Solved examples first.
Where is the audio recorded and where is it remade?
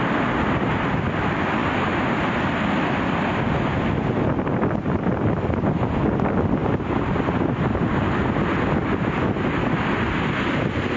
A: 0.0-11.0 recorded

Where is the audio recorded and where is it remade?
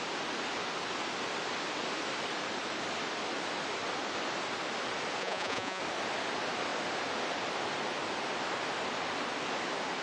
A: 0.0-5.2 recorded; 5.2-5.8 remade; 5.8-10.0 recorded